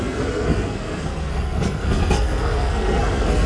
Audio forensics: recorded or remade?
remade